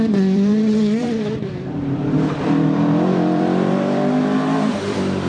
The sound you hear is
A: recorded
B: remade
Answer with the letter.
B